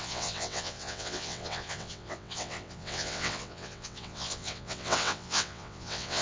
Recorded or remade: remade